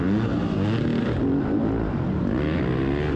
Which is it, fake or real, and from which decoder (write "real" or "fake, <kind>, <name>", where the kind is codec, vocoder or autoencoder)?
real